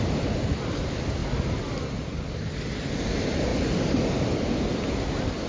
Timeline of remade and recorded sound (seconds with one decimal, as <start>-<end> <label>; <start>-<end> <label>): 0.0-5.5 recorded